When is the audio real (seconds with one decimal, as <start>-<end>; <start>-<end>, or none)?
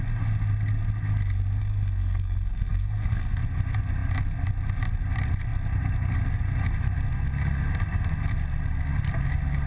0.0-1.6; 3.4-9.7